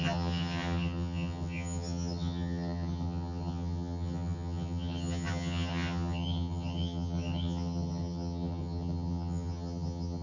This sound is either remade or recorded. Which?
remade